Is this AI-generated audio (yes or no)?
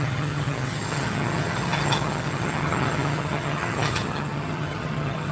yes